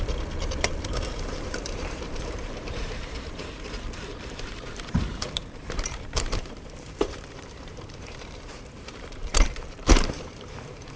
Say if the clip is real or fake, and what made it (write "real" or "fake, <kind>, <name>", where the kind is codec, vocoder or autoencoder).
fake, vocoder, BigVGAN v2